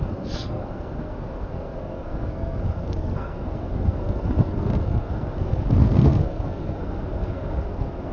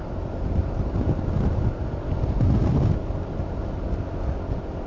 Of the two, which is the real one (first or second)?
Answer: second